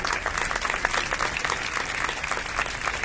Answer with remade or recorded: recorded